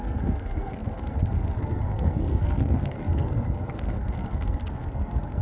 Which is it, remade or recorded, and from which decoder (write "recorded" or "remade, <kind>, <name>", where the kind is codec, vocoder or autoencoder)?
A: remade, codec, SNAC